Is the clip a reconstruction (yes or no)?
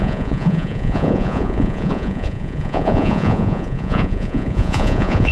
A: yes